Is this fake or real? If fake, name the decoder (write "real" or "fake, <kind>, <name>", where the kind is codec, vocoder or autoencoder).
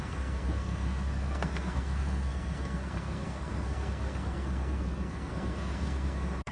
fake, codec, SNAC